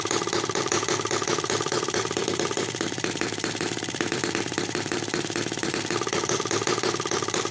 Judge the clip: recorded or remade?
remade